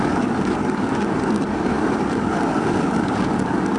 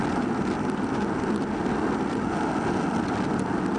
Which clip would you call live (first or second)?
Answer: second